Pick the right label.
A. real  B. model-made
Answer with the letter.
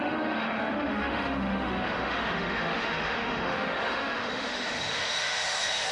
B